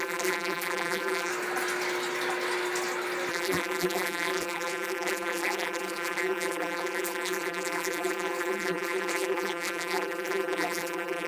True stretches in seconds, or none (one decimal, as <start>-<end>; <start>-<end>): 1.3-3.3